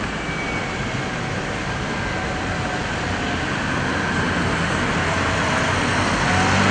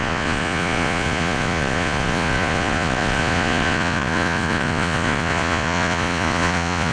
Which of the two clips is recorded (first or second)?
first